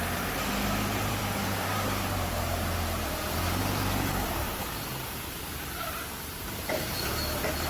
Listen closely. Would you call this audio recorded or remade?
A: remade